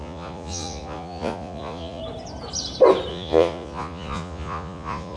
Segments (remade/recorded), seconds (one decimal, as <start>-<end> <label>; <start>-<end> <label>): 0.0-2.0 remade; 2.0-3.1 recorded; 3.1-5.2 remade